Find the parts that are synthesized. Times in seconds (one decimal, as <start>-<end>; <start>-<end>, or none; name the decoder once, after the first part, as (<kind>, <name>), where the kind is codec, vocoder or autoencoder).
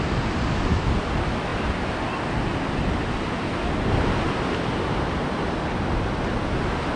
none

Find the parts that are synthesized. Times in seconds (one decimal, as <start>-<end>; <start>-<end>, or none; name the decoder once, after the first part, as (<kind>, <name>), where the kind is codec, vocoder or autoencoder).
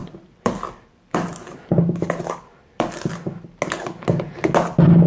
0.0-3.1 (vocoder, BigVGAN v2)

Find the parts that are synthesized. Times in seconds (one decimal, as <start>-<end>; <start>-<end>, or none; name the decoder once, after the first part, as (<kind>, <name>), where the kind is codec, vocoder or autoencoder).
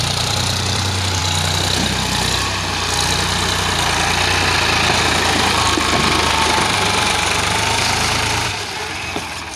0.0-1.2 (vocoder, BigVGAN v2); 5.1-9.6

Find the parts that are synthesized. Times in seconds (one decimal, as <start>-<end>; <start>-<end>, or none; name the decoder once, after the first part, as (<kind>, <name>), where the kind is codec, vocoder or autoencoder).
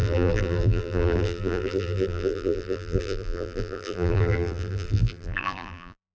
0.0-6.1 (vocoder, BigVGAN v2)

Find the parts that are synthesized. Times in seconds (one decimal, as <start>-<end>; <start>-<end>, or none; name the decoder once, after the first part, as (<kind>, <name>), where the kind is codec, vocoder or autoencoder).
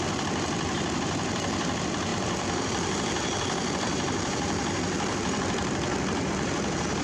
0.0-7.0 (vocoder, BigVGAN v2)